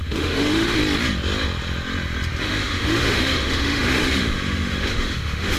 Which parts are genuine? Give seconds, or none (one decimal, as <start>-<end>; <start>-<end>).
0.8-2.4